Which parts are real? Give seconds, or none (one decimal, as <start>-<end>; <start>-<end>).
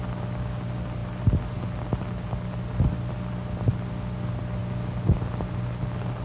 0.0-6.2